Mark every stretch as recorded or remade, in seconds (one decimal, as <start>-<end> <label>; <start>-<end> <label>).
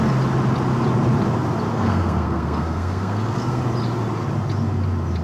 0.0-1.7 recorded; 1.7-3.6 remade; 3.6-5.2 recorded